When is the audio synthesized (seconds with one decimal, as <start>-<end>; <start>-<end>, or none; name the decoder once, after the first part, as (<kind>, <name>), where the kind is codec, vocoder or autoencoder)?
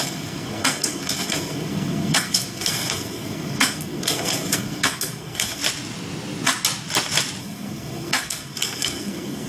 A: 0.0-5.6 (codec, SNAC); 7.4-9.5